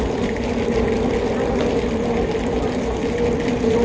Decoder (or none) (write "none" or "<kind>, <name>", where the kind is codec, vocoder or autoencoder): none